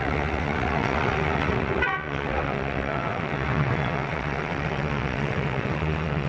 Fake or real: fake